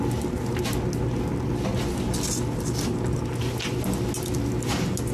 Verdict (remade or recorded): recorded